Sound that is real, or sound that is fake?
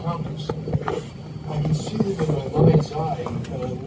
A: real